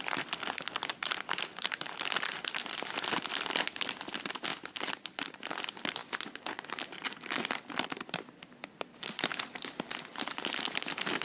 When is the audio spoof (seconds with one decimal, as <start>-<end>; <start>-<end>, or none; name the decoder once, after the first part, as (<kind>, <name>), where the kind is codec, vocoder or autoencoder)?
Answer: 0.0-11.2 (vocoder, BigVGAN v2)